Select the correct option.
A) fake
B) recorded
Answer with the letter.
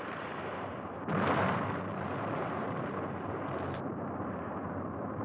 A